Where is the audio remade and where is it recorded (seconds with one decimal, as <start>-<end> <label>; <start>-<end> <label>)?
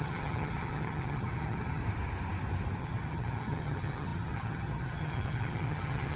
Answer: 0.0-1.8 remade; 1.8-2.8 recorded; 2.8-6.2 remade